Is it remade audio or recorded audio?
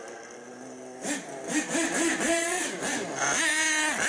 recorded